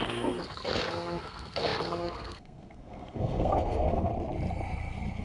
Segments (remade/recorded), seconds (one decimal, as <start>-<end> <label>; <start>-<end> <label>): 0.0-4.1 remade; 4.1-5.2 recorded